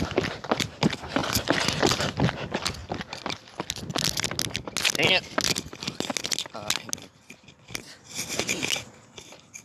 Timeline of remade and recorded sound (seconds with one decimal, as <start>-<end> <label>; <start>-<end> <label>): 0.0-9.6 recorded